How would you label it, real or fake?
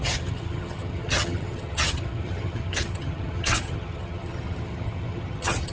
fake